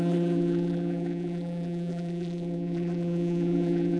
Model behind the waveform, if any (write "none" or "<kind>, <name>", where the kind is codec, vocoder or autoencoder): vocoder, BigVGAN v2